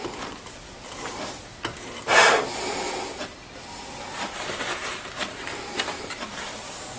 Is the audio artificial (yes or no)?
no